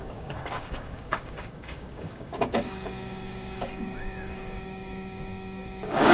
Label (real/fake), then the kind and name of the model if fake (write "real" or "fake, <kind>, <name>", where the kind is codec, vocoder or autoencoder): fake, codec, DAC